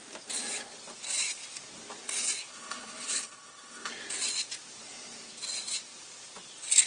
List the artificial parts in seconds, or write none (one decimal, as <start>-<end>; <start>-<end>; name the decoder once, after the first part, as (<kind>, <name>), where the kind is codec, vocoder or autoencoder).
2.5-3.9 (codec, HILCodec)